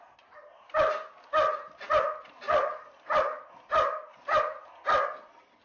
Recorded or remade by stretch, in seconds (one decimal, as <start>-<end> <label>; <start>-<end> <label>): 0.0-5.6 recorded